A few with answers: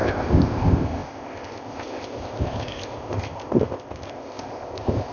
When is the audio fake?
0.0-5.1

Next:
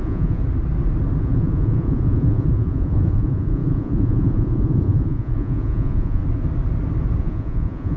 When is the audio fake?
0.0-0.4; 1.2-6.2; 7.2-8.0

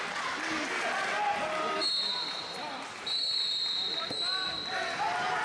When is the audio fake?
none